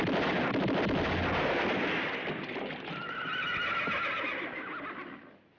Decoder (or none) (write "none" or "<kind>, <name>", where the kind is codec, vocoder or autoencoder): none